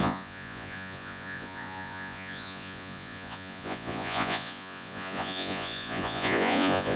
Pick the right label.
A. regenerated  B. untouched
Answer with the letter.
A